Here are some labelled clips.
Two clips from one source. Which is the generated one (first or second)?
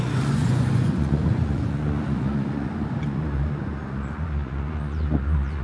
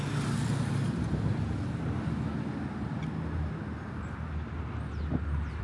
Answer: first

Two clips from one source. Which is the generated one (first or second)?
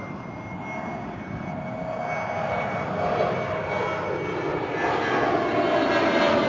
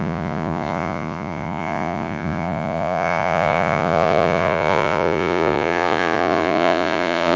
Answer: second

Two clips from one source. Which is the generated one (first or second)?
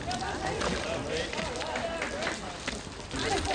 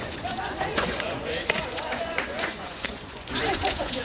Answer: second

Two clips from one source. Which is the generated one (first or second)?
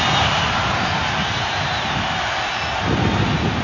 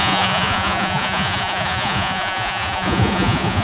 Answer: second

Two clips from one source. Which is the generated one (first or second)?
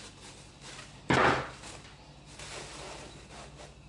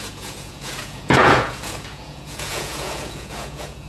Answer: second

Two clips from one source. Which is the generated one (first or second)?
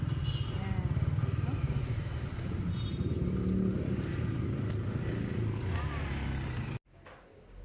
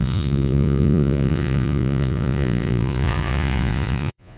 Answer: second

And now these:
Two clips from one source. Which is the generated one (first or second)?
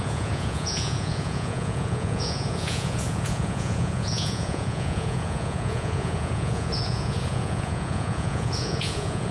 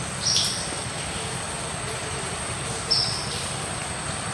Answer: first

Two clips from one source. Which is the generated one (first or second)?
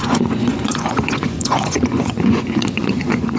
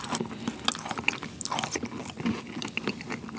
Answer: first